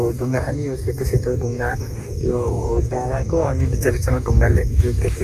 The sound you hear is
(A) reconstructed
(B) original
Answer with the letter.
A